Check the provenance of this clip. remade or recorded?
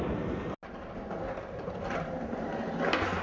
recorded